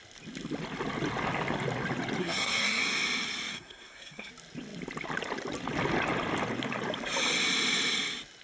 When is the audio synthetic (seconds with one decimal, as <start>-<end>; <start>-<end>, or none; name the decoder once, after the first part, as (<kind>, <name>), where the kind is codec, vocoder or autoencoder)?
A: 2.2-2.8 (codec, SNAC); 3.5-4.3